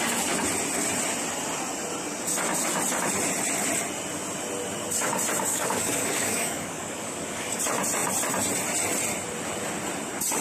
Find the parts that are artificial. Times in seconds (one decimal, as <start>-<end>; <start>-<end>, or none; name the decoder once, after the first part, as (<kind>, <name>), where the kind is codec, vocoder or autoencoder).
5.5-7.6 (codec, DAC)